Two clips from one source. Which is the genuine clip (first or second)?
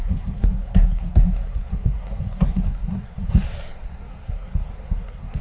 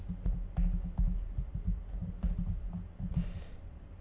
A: second